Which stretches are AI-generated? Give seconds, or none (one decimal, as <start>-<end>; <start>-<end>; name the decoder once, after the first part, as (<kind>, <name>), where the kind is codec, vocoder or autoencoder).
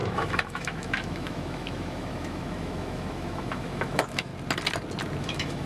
0.0-4.3 (autoencoder, DAC-VAE); 5.2-5.7